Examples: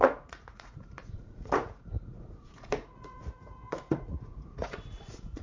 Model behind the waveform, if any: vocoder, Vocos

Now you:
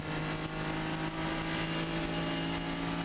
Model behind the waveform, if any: none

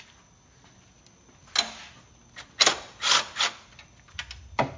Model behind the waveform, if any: none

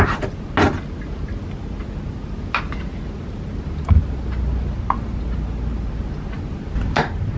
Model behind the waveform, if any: none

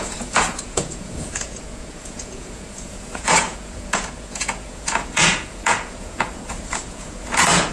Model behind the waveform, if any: vocoder, Vocos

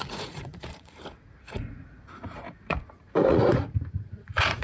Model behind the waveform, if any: vocoder, Vocos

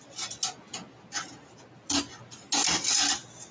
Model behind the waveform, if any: none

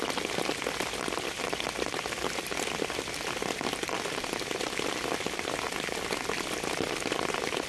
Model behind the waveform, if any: none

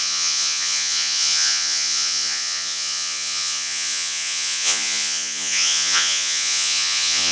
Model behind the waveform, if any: vocoder, Vocos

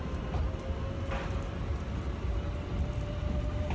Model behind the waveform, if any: none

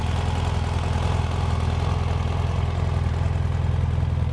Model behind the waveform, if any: none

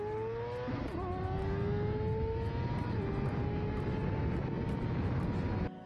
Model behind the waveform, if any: none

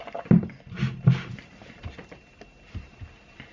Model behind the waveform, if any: none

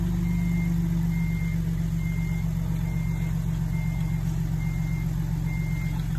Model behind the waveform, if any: none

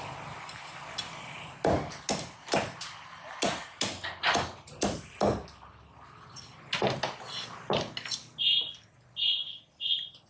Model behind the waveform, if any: none